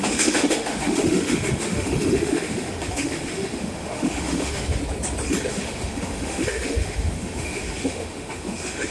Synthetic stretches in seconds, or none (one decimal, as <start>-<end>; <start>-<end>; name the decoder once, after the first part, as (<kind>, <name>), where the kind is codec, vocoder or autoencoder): 0.0-4.8 (autoencoder, DAC-VAE); 5.5-8.9